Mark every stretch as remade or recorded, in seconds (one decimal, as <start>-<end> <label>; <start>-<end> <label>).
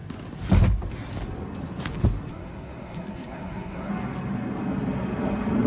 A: 0.0-2.3 recorded; 2.3-3.9 remade; 3.9-5.7 recorded